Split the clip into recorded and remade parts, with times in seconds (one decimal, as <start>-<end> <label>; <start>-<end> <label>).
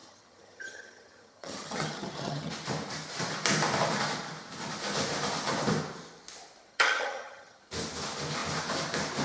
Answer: 0.0-2.5 remade; 2.5-6.7 recorded; 6.7-7.6 remade; 7.6-9.2 recorded